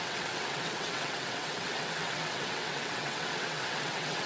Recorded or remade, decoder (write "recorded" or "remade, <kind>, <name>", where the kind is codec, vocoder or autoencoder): remade, vocoder, WaveNeXt